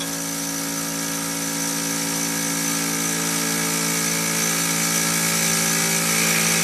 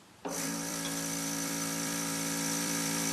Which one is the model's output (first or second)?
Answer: second